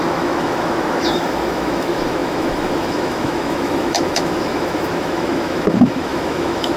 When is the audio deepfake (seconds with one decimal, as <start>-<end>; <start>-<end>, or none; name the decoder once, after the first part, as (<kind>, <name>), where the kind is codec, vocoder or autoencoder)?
0.0-6.8 (autoencoder, DAC-VAE)